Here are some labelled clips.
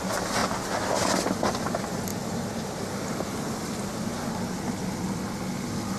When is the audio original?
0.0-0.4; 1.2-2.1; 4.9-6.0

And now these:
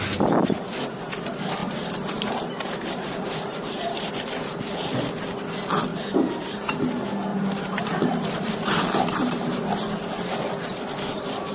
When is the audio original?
0.0-1.6; 3.8-5.9; 6.7-7.3; 8.6-9.2; 9.7-11.5

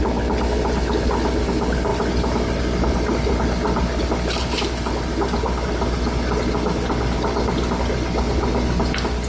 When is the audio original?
0.0-9.3

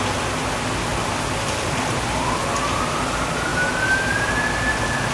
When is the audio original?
0.0-3.5; 4.4-5.1

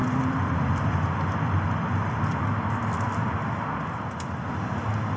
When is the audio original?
2.2-5.2

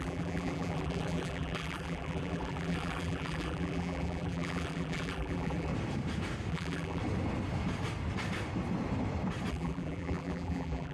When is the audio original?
5.7-6.5; 7.0-9.5

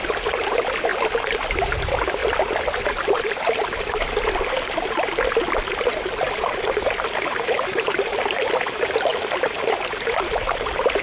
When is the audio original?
0.9-1.8; 2.2-7.3; 9.1-11.0

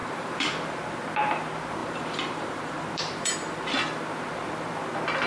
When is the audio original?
0.8-1.8; 3.3-5.3